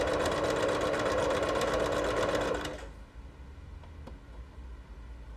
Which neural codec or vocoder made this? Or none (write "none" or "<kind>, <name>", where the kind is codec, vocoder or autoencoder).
none